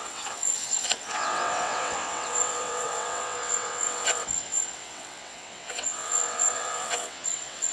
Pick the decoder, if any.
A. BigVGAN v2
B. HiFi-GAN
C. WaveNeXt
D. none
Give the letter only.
C